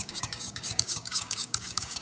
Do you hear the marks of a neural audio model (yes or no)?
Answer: yes